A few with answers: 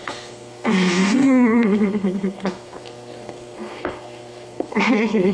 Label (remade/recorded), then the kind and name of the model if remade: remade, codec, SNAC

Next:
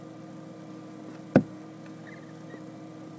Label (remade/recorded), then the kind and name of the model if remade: recorded